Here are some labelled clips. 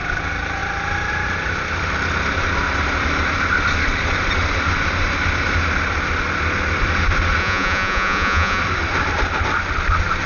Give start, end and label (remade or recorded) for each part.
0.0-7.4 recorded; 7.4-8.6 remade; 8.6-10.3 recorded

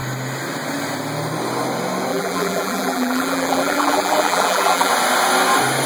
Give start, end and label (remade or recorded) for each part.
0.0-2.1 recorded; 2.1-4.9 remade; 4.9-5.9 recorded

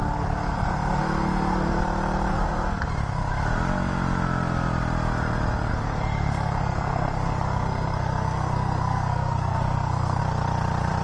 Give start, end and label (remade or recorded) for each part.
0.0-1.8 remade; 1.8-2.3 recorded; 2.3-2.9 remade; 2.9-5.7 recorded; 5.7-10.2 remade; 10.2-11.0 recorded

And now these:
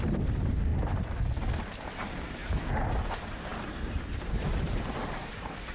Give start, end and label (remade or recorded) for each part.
0.0-0.7 remade; 0.7-2.0 recorded; 2.0-2.4 remade; 2.4-3.1 recorded; 3.1-5.7 remade

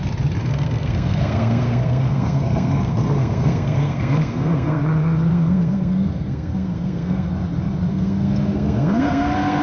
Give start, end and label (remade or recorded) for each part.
0.0-0.4 recorded; 0.4-4.8 remade; 4.8-5.3 recorded; 5.3-7.3 remade; 7.3-7.9 recorded; 7.9-9.6 remade

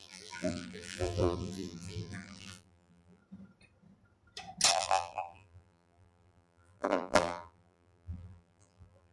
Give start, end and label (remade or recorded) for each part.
0.0-3.2 remade; 3.2-4.7 recorded; 4.7-9.1 remade

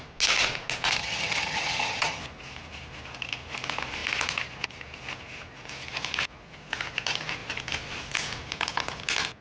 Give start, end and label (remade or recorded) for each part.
0.0-1.0 recorded; 1.0-2.2 remade; 2.2-9.4 recorded

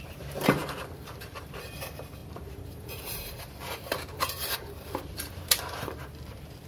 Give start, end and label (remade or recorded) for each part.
0.0-6.7 remade